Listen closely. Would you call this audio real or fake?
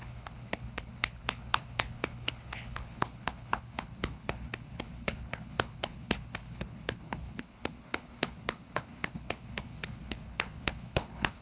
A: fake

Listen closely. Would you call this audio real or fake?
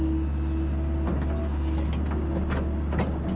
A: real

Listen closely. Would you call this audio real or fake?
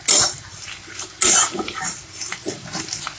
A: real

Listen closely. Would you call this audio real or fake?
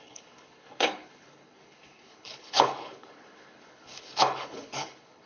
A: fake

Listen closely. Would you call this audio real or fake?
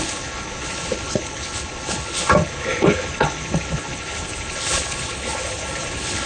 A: fake